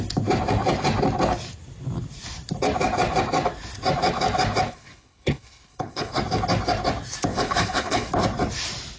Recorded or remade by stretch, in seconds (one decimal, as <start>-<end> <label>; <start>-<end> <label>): 0.0-4.7 recorded; 4.7-6.2 remade; 6.2-7.3 recorded; 7.3-8.1 remade; 8.1-9.0 recorded